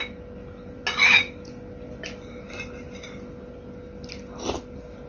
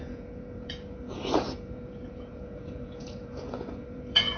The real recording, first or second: first